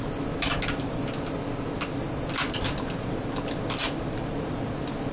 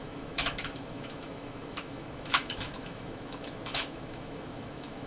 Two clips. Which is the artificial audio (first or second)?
second